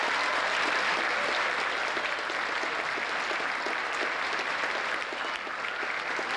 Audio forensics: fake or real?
real